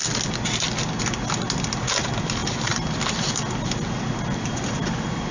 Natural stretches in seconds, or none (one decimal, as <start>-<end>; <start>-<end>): 0.0-5.3